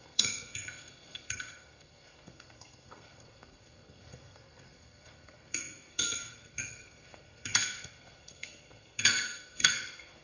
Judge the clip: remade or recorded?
remade